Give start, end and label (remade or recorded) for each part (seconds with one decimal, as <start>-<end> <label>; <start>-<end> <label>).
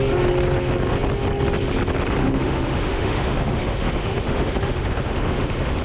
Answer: 0.0-2.2 recorded; 2.2-5.8 remade